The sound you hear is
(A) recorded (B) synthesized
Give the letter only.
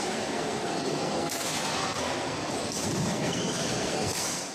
B